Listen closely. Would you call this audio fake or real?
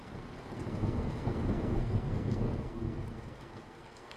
fake